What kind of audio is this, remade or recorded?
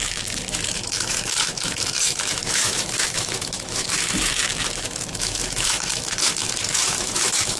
remade